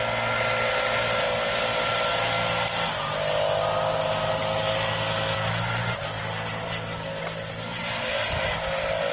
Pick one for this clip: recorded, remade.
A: recorded